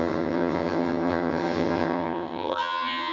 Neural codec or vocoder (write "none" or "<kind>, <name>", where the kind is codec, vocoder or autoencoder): vocoder, HiFi-GAN